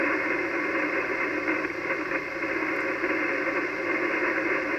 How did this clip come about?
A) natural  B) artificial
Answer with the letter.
A